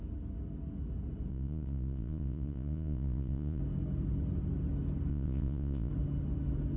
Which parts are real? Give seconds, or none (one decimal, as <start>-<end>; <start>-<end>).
0.0-1.3; 3.6-5.1; 5.9-6.8